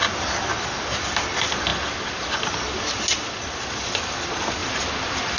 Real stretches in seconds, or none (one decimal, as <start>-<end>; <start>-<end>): 0.0-5.4